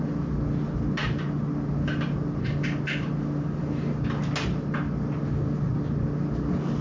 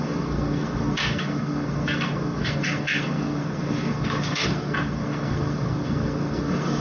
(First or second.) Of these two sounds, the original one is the first